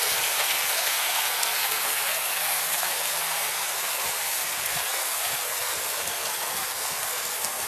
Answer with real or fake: fake